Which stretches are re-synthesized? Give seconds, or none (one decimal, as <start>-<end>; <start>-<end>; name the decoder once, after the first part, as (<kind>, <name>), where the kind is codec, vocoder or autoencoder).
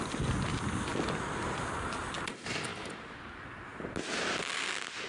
none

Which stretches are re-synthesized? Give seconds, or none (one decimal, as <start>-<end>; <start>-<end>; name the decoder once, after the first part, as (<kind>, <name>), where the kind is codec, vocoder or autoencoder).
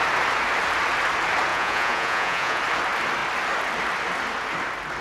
1.5-2.6 (vocoder, Vocos)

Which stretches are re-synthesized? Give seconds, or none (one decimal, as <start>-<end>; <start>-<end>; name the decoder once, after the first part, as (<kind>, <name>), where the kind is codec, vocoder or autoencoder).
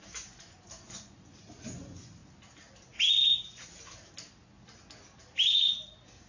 0.0-2.2 (vocoder, Vocos)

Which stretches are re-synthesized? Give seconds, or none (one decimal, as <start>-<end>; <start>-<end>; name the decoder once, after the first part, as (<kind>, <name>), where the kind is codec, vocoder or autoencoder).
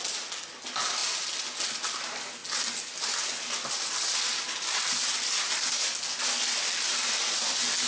none